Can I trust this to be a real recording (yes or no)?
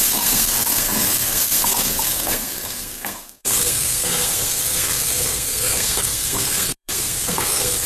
no